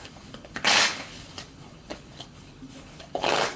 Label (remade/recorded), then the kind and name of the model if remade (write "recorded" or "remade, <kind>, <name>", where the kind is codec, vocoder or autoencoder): remade, codec, HILCodec